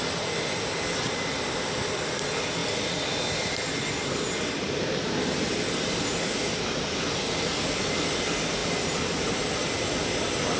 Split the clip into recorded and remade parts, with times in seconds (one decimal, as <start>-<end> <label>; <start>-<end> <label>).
0.0-2.6 recorded; 2.6-6.0 remade; 6.0-8.6 recorded; 8.6-9.3 remade; 9.3-10.6 recorded